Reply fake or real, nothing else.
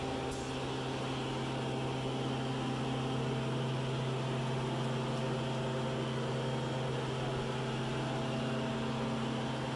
real